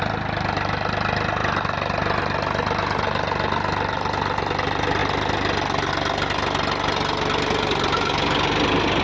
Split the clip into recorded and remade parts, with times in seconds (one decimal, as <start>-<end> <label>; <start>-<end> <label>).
0.0-9.0 recorded